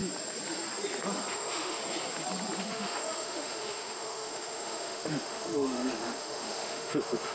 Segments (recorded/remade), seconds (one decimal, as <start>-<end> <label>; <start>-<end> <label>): 0.0-1.3 recorded; 1.3-1.8 remade; 1.8-2.6 recorded; 2.6-7.3 remade